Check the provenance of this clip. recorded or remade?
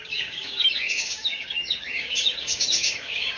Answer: remade